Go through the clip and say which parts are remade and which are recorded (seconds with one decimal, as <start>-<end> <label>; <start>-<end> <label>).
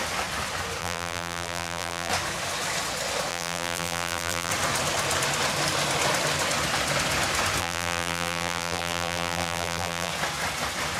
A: 0.0-0.8 recorded; 0.8-2.1 remade; 2.1-3.3 recorded; 3.3-4.5 remade; 4.5-7.6 recorded; 7.6-10.1 remade; 10.1-11.0 recorded